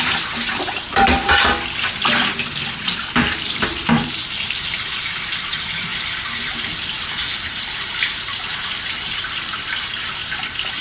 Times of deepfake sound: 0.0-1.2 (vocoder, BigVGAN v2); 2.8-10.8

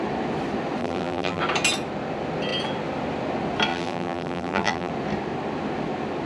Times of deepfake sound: 0.8-1.4 (vocoder, BigVGAN v2); 3.7-4.9

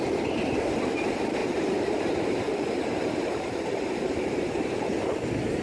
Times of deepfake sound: 1.4-4.8 (vocoder, BigVGAN v2)